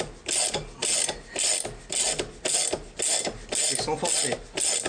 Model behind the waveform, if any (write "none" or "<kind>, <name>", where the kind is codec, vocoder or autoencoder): none